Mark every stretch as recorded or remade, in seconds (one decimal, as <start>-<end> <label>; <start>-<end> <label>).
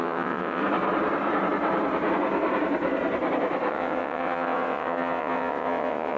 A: 0.0-0.6 remade; 0.6-3.7 recorded; 3.7-6.2 remade